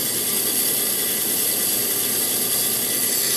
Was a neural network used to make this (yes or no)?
no